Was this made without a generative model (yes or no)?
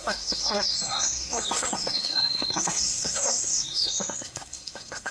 no